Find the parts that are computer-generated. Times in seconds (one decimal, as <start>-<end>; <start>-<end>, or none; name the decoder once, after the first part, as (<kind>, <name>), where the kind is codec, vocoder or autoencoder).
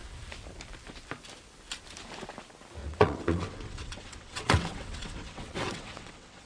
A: 2.8-6.5 (vocoder, WaveNeXt)